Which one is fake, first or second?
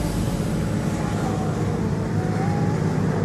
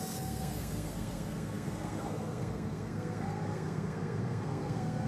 second